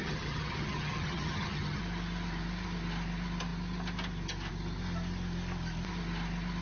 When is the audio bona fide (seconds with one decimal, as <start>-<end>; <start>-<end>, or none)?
1.8-6.6